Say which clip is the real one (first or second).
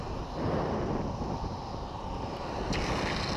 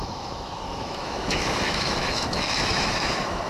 first